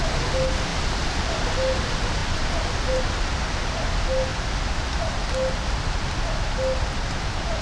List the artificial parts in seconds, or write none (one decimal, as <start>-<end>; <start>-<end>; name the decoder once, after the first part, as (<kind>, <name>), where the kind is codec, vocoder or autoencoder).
0.7-1.5 (vocoder, BigVGAN v2); 2.2-3.0